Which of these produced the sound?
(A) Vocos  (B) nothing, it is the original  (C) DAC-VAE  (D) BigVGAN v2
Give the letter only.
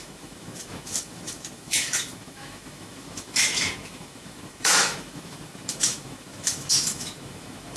C